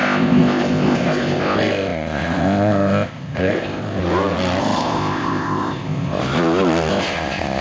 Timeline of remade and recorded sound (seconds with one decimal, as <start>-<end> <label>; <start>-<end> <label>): 0.0-4.0 remade; 4.0-4.6 recorded; 4.6-6.2 remade; 6.2-6.9 recorded; 6.9-7.6 remade